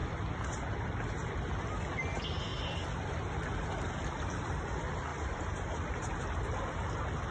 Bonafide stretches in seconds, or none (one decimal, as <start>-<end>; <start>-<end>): 0.0-5.1; 6.4-7.3